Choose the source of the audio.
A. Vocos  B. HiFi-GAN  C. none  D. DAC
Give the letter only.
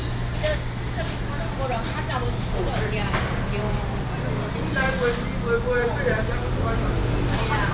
C